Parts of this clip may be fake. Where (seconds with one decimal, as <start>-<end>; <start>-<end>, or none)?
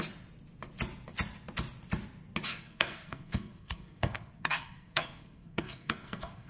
2.5-6.5